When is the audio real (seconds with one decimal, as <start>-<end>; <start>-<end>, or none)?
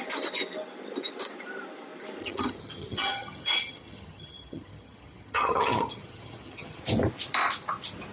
0.0-2.2; 6.8-8.1